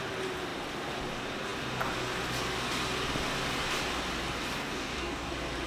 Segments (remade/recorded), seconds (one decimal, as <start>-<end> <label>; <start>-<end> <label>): 0.0-4.6 recorded; 4.6-5.3 remade; 5.3-5.7 recorded